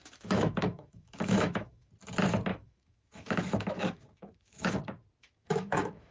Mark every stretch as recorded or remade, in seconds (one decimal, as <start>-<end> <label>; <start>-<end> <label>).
0.0-1.9 remade; 1.9-2.5 recorded; 2.5-4.8 remade; 4.8-5.2 recorded; 5.2-6.1 remade